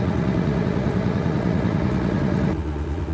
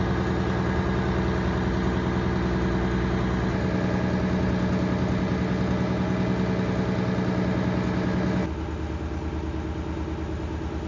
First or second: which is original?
second